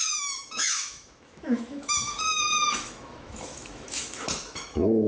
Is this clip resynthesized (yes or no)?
yes